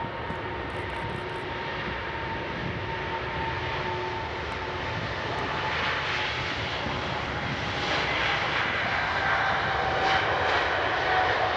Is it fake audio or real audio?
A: real